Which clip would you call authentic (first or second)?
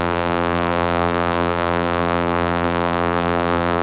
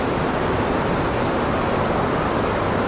second